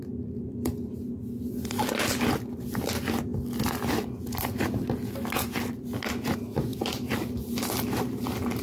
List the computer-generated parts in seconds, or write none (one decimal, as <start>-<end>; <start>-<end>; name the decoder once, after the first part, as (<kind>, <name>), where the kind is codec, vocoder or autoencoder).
6.7-8.2 (vocoder, BigVGAN v2)